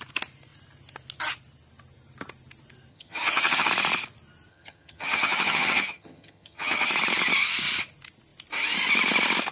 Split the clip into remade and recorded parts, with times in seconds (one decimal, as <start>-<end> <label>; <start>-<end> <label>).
0.0-2.9 recorded; 2.9-3.7 remade; 3.7-4.5 recorded; 4.5-6.9 remade; 6.9-9.5 recorded